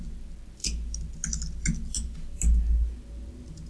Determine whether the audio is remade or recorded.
recorded